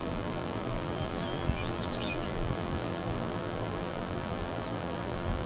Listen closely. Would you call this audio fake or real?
fake